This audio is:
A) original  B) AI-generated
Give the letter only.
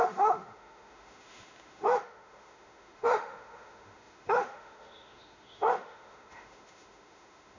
B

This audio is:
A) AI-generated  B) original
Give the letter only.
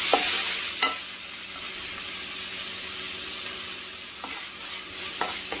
B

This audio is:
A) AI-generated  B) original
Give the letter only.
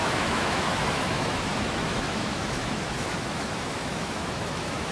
A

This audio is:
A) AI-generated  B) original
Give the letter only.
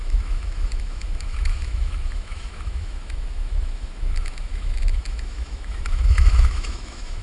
A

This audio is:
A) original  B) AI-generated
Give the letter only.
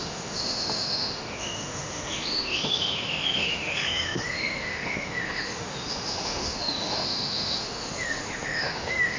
B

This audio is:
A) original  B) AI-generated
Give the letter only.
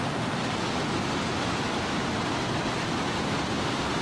A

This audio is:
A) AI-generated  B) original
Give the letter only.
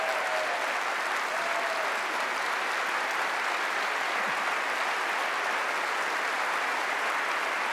B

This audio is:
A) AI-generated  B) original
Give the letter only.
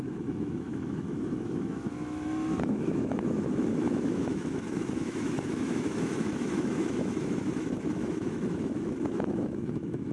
A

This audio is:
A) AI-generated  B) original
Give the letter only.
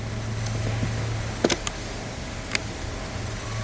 B